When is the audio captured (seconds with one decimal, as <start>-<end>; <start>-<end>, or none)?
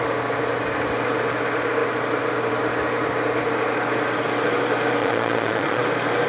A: 0.0-5.0; 5.8-6.3